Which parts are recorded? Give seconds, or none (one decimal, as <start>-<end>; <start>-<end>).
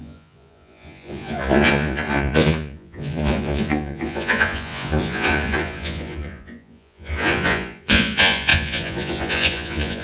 none